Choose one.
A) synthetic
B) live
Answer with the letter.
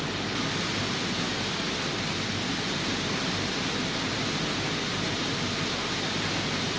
B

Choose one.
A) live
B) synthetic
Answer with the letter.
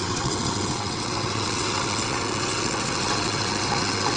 B